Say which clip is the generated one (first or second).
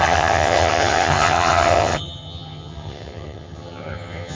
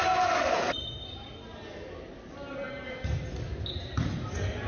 first